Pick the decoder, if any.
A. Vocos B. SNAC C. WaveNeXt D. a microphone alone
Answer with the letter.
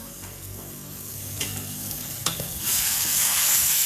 B